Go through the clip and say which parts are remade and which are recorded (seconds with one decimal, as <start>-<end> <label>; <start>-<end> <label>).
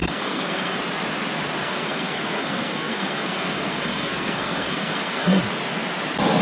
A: 0.0-0.8 remade; 0.8-1.6 recorded; 1.6-5.4 remade; 5.4-6.4 recorded